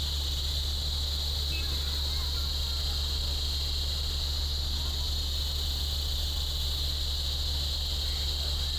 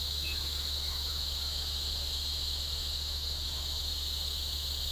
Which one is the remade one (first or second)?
second